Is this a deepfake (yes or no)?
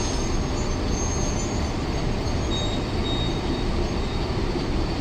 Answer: no